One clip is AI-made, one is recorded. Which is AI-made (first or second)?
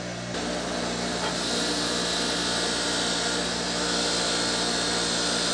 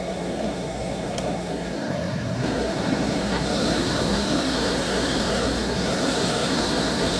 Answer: second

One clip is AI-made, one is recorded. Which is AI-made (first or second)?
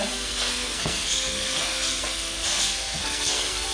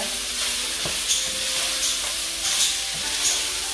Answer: first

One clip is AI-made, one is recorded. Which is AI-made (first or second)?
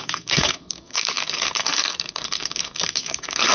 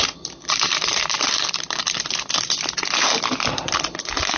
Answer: first